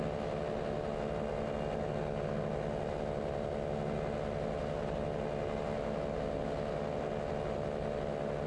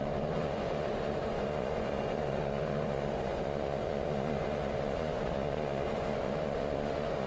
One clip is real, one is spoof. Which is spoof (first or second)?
second